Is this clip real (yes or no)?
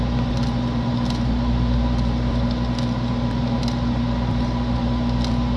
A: yes